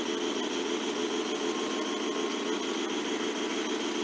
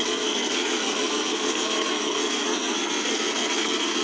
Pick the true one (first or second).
first